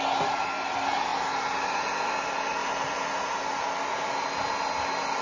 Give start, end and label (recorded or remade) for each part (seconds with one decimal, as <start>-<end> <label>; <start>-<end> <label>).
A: 0.0-5.2 recorded